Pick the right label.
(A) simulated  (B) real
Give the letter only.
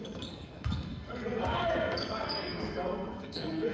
A